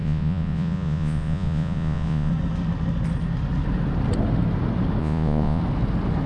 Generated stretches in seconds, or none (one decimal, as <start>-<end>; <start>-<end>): 0.0-2.3; 5.0-5.6